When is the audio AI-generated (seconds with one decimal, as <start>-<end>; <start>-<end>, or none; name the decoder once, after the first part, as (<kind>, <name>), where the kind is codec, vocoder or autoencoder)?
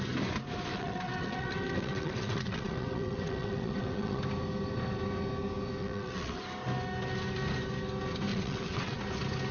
0.7-4.2 (vocoder, WaveNeXt); 5.8-6.4; 8.3-9.0